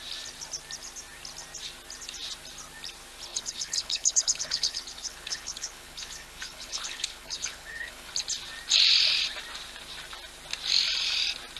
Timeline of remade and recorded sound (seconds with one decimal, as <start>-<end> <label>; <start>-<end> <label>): 0.0-3.3 recorded; 3.3-8.1 remade; 8.1-11.6 recorded

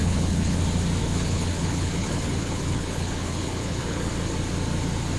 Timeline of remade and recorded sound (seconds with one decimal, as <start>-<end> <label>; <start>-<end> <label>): 0.0-0.6 remade; 0.6-1.0 recorded; 1.0-4.1 remade; 4.1-5.2 recorded

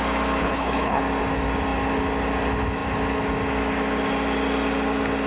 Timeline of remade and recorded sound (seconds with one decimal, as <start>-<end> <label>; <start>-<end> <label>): 0.0-0.4 recorded; 0.4-1.0 remade; 1.0-5.3 recorded

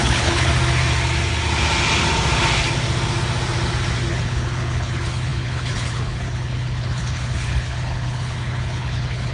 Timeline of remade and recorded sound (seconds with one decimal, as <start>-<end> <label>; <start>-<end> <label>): 0.0-0.5 remade; 0.5-4.1 recorded; 4.1-9.3 remade

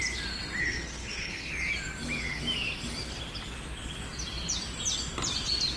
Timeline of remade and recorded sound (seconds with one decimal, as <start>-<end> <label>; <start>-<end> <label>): 0.0-0.6 recorded; 0.6-1.5 remade; 1.5-5.8 recorded

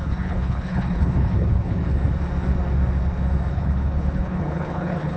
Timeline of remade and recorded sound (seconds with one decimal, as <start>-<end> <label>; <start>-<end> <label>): 0.0-1.8 remade; 1.8-3.5 recorded; 3.5-5.2 remade